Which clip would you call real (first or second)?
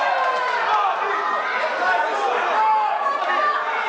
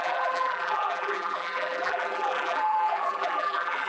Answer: first